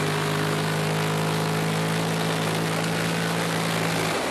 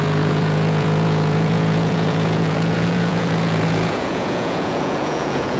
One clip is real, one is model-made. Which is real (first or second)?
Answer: first